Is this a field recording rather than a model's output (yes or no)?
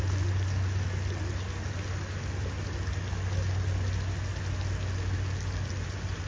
yes